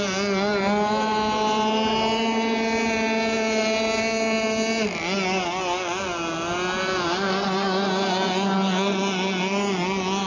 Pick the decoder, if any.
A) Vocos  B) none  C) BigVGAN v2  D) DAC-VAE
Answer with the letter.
B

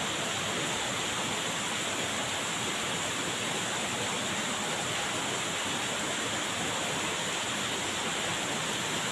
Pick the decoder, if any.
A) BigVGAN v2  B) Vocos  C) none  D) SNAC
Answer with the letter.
C